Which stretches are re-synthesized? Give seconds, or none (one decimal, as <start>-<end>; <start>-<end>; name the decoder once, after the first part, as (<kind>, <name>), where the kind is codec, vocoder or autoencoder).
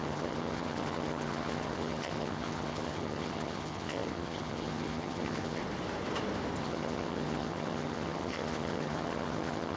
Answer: 0.0-5.6 (vocoder, HiFi-GAN); 6.6-9.8